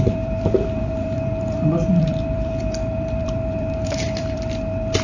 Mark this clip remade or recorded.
remade